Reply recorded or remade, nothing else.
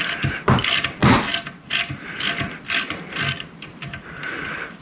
recorded